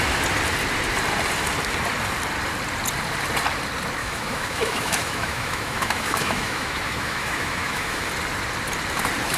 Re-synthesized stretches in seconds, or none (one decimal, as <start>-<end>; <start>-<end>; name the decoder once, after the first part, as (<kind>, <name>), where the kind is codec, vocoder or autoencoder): 4.0-8.1 (autoencoder, DAC-VAE)